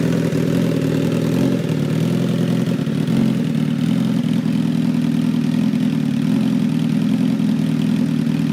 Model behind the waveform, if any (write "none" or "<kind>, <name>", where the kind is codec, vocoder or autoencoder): none